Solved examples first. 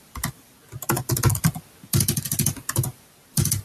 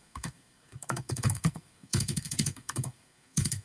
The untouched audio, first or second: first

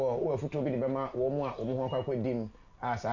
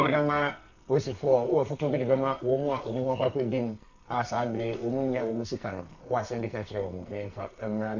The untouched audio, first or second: first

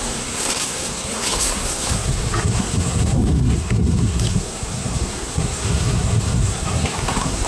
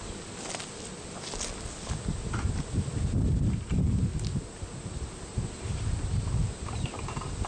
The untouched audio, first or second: second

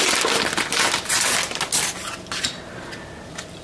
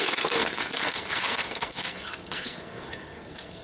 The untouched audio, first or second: first